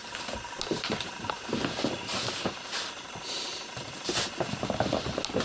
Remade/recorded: recorded